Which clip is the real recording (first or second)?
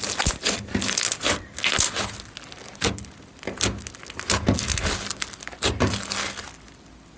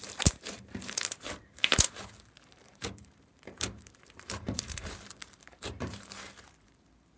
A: first